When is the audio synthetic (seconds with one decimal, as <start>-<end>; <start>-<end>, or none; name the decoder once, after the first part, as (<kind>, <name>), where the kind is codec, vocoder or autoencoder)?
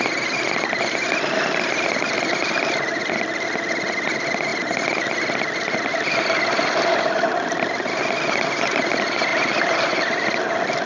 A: none